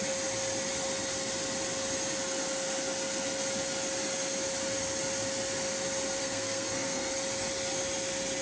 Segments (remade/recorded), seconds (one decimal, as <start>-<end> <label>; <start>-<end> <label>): 0.0-6.2 recorded; 6.2-7.1 remade; 7.1-8.4 recorded